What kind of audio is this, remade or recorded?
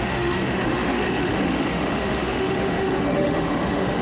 remade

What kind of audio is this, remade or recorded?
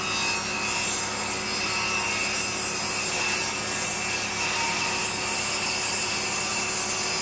recorded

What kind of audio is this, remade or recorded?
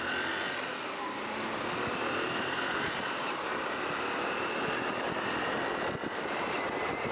recorded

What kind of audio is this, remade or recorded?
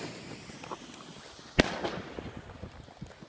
recorded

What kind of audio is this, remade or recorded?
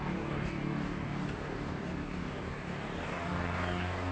remade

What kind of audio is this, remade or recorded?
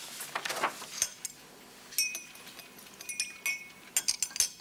recorded